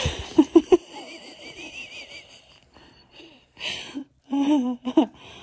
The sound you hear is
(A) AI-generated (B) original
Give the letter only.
A